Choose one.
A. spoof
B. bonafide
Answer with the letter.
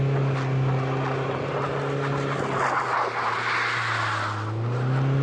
B